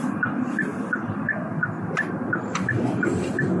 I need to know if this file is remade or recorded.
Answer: recorded